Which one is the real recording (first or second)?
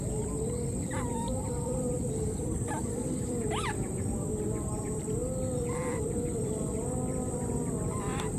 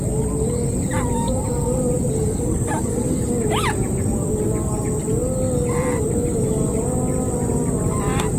second